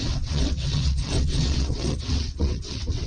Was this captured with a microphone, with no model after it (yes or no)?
no